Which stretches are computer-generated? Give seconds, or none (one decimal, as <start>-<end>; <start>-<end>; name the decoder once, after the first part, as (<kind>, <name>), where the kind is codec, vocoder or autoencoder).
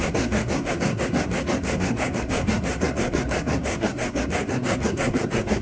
0.0-5.6 (codec, SNAC)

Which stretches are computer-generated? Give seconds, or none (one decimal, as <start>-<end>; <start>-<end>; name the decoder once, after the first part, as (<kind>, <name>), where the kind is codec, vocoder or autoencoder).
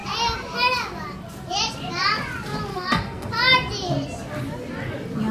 2.7-3.3 (codec, SNAC)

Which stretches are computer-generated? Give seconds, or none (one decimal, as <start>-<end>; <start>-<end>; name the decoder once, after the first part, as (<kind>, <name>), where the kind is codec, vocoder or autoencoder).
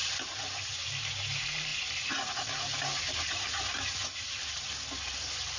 none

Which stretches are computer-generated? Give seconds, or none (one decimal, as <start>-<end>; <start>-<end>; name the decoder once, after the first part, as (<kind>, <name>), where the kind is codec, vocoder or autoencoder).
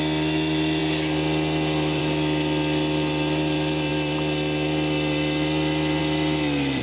none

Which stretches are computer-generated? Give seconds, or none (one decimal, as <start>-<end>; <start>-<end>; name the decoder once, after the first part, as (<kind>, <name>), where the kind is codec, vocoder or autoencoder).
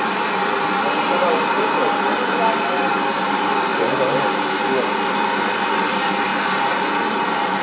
none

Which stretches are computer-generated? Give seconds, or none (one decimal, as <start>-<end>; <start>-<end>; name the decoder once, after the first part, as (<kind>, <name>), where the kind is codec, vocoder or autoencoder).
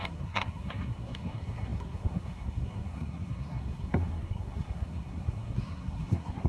0.0-6.5 (codec, SNAC)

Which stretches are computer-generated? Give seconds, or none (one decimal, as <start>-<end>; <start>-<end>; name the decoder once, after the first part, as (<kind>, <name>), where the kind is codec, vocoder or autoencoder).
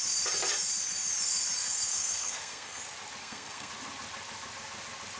1.6-2.8 (codec, SNAC); 3.2-3.7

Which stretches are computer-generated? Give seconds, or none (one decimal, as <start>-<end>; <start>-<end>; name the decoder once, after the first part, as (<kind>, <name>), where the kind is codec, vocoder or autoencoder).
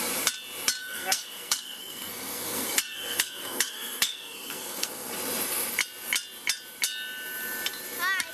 0.8-5.1 (codec, SNAC)